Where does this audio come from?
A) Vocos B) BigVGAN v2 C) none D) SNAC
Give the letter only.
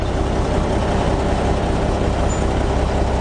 C